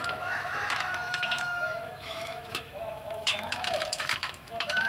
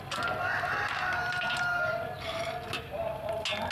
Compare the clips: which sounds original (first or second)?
second